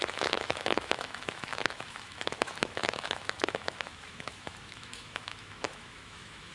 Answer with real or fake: fake